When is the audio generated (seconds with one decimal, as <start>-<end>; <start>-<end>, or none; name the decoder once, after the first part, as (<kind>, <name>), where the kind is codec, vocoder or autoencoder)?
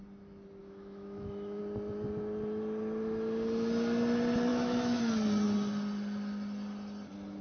0.6-1.6 (autoencoder, DAC-VAE); 4.5-5.0